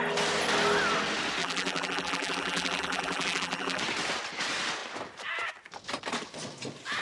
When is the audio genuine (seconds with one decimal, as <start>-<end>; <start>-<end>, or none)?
0.0-1.4; 3.8-7.0